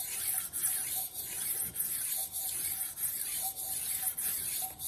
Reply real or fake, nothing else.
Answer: fake